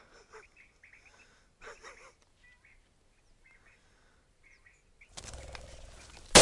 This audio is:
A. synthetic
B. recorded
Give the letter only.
B